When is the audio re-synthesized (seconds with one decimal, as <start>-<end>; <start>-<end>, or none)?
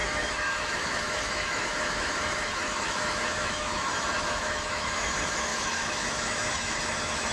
0.0-7.3